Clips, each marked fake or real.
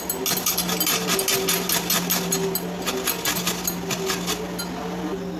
real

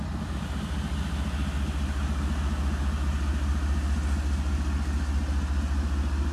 real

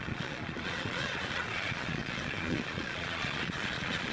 fake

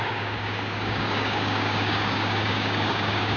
fake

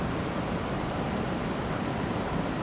fake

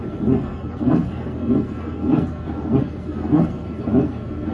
fake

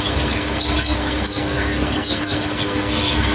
fake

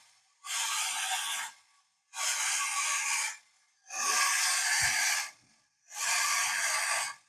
real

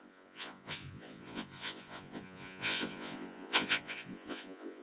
fake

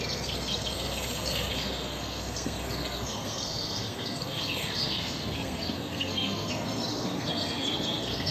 fake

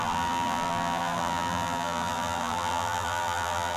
fake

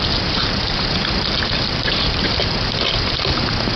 fake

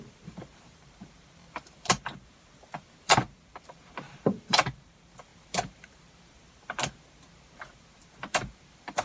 fake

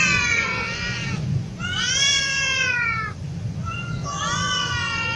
fake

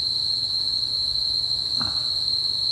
real